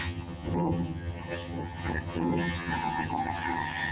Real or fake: fake